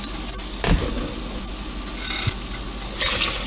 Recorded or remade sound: recorded